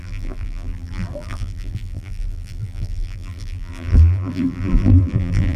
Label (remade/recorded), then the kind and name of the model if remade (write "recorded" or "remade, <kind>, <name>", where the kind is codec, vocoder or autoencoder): remade, vocoder, BigVGAN v2